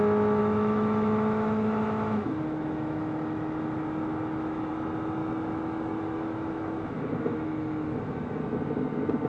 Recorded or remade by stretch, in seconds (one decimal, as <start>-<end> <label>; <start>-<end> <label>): 0.0-0.4 recorded; 0.4-4.7 remade; 4.7-5.2 recorded; 5.2-8.4 remade; 8.4-9.3 recorded